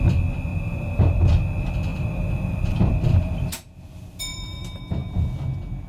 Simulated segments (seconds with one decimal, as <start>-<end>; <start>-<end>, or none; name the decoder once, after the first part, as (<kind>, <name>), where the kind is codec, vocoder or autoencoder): 0.5-1.2 (vocoder, BigVGAN v2); 1.9-3.4; 4.3-4.8